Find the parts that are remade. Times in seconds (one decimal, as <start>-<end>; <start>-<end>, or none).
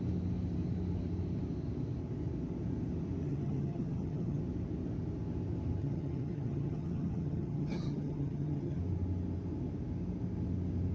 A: 3.2-4.4; 5.8-8.8